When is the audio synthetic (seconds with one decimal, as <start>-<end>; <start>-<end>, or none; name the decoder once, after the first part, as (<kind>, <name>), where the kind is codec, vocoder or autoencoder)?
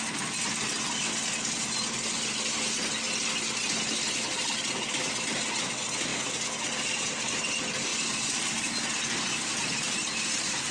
none